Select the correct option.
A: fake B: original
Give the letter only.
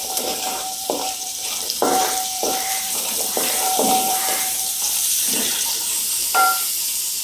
A